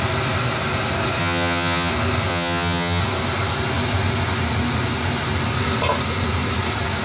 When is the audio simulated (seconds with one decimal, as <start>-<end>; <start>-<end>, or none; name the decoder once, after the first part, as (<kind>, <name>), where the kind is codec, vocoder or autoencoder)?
1.2-1.9 (vocoder, HiFi-GAN); 2.3-3.0